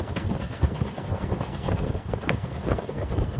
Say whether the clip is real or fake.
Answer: fake